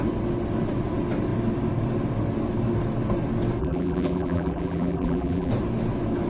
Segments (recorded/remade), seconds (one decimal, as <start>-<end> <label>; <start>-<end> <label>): 0.0-3.6 recorded; 3.6-5.5 remade; 5.5-6.3 recorded